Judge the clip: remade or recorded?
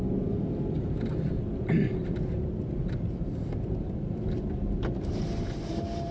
recorded